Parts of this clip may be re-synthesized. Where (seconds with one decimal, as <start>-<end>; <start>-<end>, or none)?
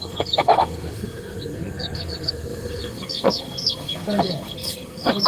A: 0.0-5.3